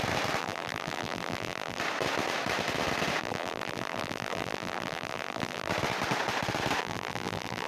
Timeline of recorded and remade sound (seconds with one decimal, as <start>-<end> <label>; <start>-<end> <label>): 0.0-0.4 recorded; 0.4-1.8 remade; 1.8-3.2 recorded; 3.2-5.7 remade; 5.7-6.8 recorded; 6.8-7.7 remade